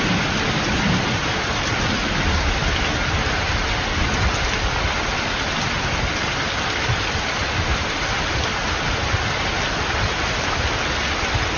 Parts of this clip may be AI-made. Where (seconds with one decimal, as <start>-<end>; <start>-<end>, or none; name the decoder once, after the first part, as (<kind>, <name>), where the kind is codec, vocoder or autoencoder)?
none